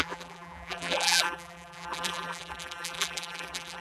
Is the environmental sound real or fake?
fake